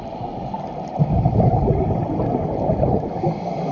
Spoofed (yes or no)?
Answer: no